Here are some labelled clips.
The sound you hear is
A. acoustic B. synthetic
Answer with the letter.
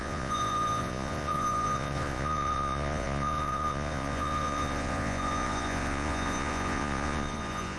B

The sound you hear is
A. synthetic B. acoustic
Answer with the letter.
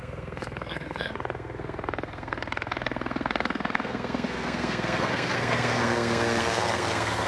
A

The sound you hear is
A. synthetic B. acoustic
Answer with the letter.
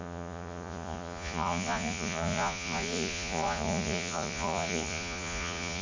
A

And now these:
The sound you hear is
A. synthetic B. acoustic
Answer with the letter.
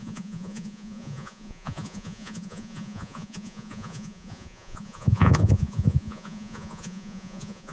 A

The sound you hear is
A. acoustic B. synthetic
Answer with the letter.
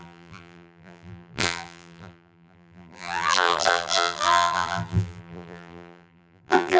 B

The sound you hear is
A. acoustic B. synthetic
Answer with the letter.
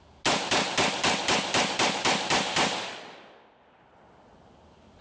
A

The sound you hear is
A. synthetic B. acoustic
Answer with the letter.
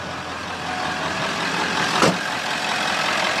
B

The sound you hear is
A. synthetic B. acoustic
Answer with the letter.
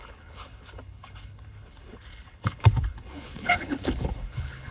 A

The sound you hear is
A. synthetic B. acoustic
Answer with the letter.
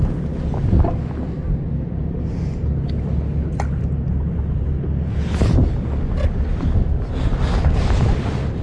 B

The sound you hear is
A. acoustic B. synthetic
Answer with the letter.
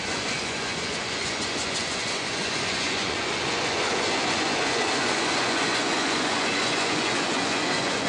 B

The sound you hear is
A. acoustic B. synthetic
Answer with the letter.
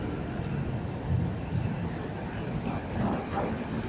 A